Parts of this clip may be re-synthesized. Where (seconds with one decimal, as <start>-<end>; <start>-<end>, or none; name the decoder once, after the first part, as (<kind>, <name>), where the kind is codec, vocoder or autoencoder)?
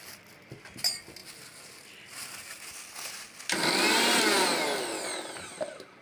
none